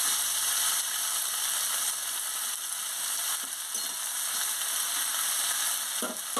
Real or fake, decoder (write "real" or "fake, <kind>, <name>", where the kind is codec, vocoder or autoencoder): real